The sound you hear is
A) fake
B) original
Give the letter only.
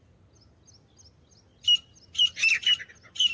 B